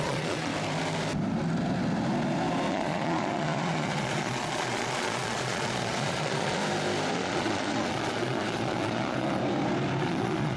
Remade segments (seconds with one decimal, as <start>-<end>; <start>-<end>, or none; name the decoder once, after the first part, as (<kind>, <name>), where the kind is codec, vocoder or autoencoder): 0.0-0.5 (vocoder, Vocos); 2.7-6.6; 7.1-9.4; 10.0-10.6